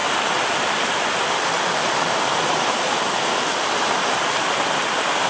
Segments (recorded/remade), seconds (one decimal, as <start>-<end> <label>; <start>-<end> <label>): 0.0-5.3 recorded